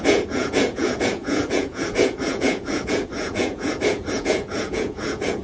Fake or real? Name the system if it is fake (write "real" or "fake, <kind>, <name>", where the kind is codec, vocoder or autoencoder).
fake, vocoder, Vocos